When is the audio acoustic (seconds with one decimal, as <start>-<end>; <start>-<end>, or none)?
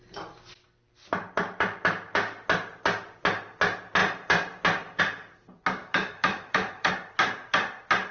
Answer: 0.0-5.8; 6.9-8.1